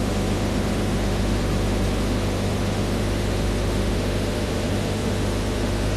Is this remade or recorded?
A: remade